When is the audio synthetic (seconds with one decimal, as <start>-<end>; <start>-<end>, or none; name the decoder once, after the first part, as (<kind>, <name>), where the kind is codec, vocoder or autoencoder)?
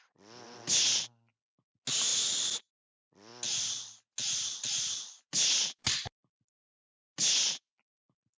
none